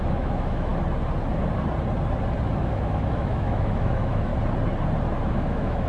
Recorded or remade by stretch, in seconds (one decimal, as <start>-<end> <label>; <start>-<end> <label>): 0.0-0.7 remade; 0.7-2.6 recorded; 2.6-4.3 remade; 4.3-5.2 recorded; 5.2-5.9 remade